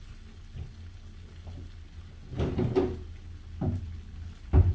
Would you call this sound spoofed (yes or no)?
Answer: no